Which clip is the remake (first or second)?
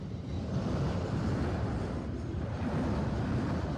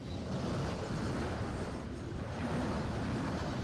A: first